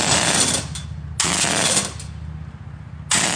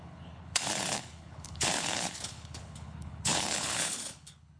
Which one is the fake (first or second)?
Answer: second